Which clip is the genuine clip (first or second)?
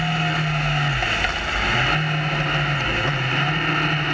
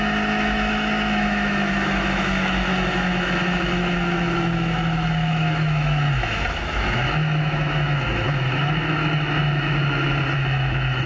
first